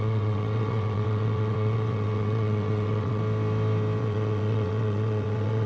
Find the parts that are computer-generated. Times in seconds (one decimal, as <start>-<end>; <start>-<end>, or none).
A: 0.0-3.2; 4.0-5.7